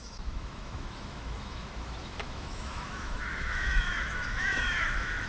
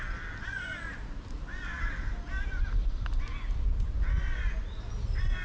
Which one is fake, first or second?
first